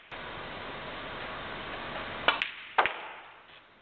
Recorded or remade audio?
recorded